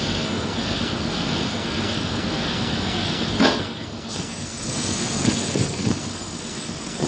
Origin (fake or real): fake